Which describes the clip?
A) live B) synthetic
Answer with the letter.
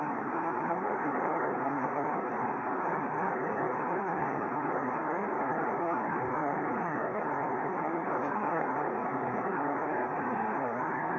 B